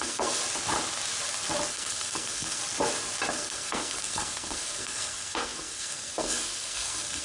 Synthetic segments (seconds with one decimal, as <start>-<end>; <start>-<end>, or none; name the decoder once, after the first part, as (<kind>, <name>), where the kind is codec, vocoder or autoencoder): 0.0-0.4 (codec, SNAC); 1.7-2.6; 3.3-7.2